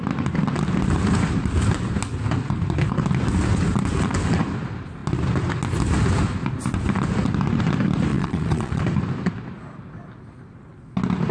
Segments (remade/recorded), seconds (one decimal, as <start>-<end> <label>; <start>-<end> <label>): 0.0-8.1 recorded; 8.1-8.8 remade; 8.8-11.3 recorded